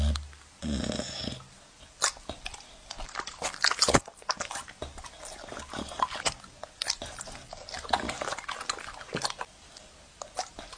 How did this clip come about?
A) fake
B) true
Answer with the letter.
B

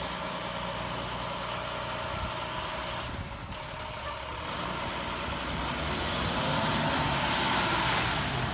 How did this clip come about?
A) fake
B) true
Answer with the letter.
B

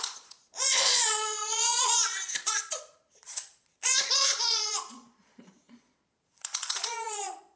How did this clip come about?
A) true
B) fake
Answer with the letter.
B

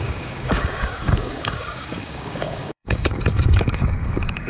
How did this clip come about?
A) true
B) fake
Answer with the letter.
B